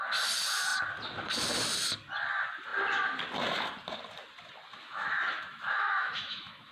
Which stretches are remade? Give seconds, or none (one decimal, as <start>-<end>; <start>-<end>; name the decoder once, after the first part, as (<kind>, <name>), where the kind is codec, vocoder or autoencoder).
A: 4.8-6.7 (autoencoder, DAC-VAE)